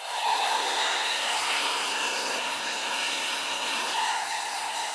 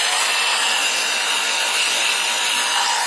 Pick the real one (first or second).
second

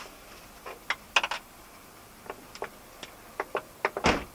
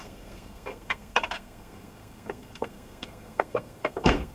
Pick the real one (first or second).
first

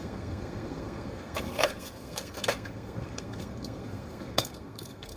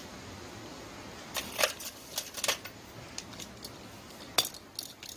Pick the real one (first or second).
second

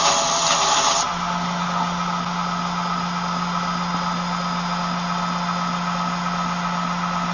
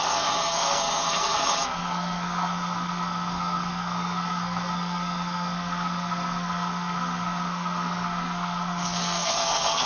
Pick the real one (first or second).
first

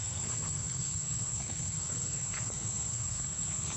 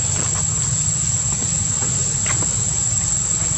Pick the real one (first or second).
second